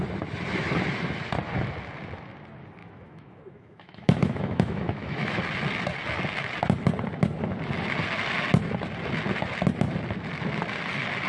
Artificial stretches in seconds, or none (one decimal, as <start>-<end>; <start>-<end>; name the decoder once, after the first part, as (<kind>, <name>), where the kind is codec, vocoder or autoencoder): 2.8-5.4 (autoencoder, DAC-VAE)